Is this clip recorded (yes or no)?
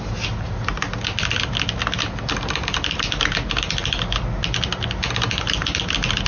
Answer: yes